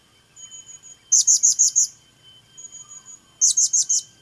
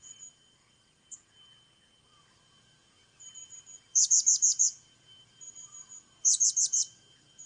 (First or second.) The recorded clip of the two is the first